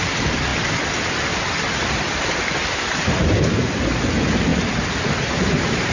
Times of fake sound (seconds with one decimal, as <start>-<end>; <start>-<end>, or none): none